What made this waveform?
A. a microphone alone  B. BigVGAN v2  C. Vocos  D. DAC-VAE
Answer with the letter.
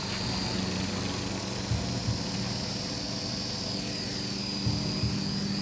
A